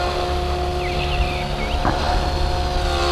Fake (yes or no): no